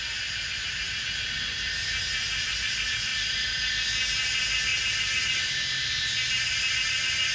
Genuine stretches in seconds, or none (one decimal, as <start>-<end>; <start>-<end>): 0.0-3.1; 3.7-7.3